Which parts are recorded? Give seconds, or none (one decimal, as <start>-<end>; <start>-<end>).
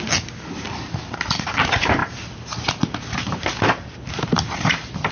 0.0-5.1